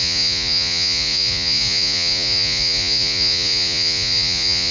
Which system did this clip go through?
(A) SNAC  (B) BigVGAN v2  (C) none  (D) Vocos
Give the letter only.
D